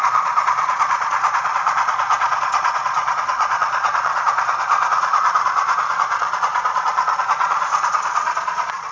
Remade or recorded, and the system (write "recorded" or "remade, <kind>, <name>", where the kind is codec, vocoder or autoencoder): remade, vocoder, Vocos